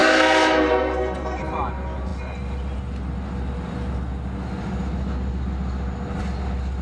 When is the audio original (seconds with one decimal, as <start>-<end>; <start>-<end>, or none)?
1.4-6.8